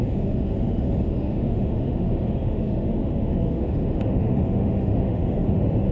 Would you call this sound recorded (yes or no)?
no